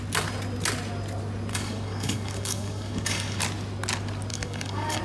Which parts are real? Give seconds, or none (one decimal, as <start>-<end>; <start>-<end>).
0.0-1.5; 3.4-4.3